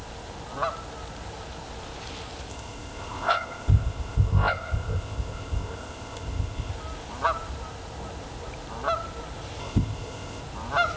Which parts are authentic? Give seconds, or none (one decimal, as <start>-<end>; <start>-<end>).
0.0-2.5; 6.7-9.6; 10.4-11.0